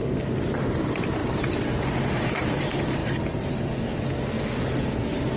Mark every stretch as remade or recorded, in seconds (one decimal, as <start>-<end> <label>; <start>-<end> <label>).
0.0-1.2 recorded; 1.2-2.6 remade; 2.6-5.4 recorded